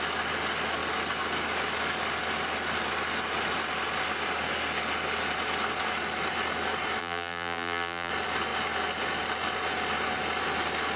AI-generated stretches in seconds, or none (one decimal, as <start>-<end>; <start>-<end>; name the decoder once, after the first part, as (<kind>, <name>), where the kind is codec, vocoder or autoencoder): 7.0-8.1 (vocoder, BigVGAN v2)